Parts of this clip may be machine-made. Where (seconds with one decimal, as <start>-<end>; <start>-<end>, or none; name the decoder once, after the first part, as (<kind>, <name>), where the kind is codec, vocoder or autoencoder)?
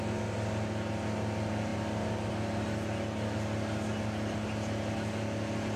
none